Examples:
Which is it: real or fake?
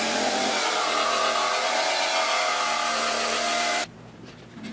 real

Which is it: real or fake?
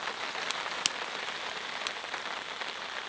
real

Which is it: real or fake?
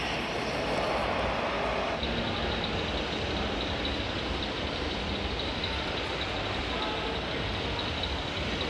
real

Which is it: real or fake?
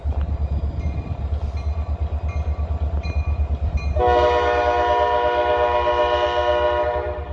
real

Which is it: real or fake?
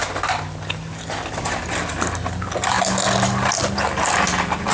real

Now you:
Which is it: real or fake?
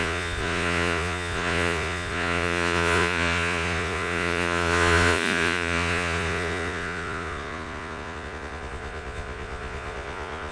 fake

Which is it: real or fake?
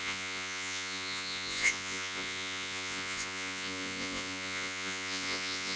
fake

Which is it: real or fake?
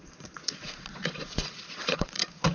fake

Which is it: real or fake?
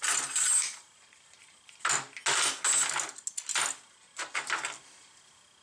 real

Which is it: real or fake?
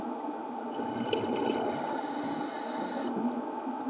real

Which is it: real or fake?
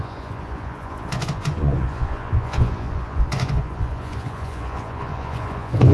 fake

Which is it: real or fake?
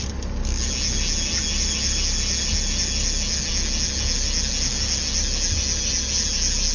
real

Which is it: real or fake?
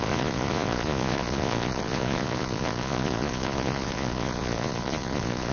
fake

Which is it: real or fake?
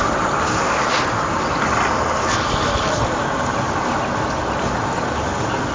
real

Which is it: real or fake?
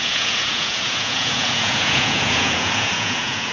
fake